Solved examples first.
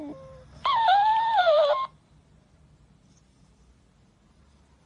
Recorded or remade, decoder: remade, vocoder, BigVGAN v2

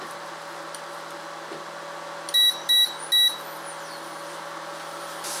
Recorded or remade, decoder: recorded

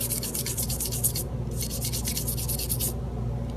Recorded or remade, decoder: recorded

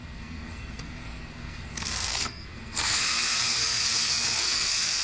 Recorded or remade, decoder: remade, codec, SNAC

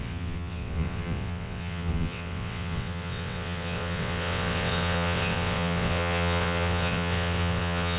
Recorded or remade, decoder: remade, vocoder, WaveNeXt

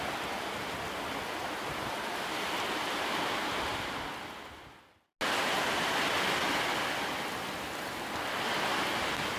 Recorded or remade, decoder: recorded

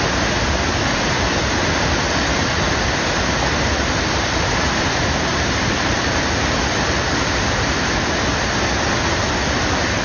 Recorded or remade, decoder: recorded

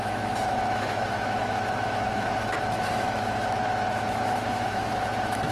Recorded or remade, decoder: remade, autoencoder, DAC-VAE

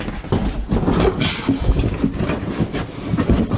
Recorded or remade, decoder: recorded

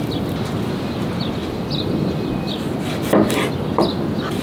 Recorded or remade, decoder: recorded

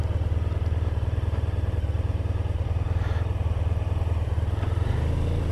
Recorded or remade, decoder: recorded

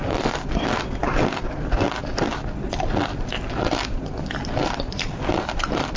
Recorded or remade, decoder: recorded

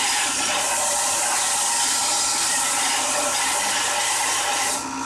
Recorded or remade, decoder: recorded